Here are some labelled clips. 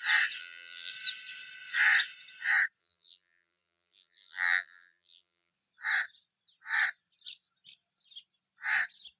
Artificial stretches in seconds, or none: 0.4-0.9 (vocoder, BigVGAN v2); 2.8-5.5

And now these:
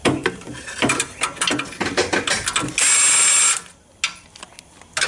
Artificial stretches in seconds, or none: 0.0-1.2 (vocoder, BigVGAN v2)

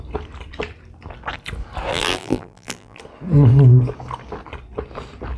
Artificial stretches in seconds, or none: 1.9-3.0 (vocoder, BigVGAN v2)

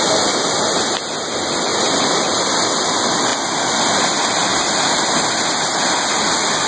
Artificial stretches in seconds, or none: 1.7-2.3 (vocoder, BigVGAN v2); 4.5-5.0

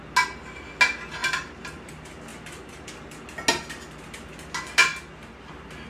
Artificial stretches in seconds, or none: 2.3-2.9 (vocoder, BigVGAN v2); 4.9-5.5

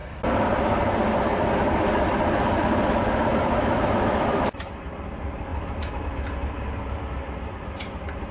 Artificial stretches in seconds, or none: 3.3-3.9 (vocoder, BigVGAN v2)